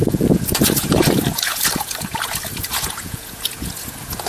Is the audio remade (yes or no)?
yes